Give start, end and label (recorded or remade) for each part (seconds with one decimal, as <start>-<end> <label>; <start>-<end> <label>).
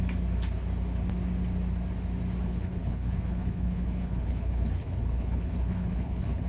0.0-2.4 recorded; 2.4-6.5 remade